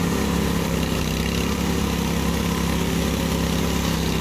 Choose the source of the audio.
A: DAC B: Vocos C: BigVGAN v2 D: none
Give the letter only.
D